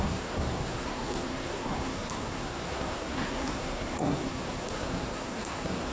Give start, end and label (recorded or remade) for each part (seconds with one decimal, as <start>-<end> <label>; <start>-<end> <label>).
0.0-5.9 remade

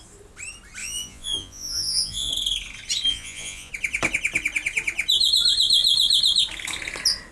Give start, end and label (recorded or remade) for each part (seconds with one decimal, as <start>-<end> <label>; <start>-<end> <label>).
0.0-0.8 recorded; 0.8-2.3 remade; 2.3-3.1 recorded; 3.1-3.7 remade; 3.7-7.3 recorded

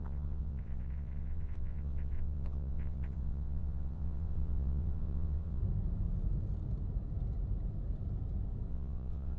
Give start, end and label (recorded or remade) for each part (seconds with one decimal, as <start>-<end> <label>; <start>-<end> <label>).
0.0-5.6 remade; 5.6-8.7 recorded; 8.7-9.4 remade

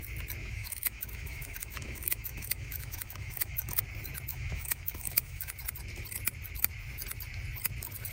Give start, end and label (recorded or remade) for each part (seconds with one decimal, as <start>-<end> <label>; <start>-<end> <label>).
0.0-0.4 recorded; 0.4-3.8 remade; 3.8-4.3 recorded; 4.3-5.5 remade; 5.5-8.1 recorded